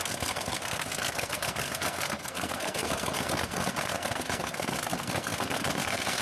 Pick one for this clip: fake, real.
fake